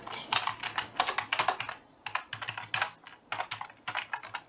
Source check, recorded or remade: recorded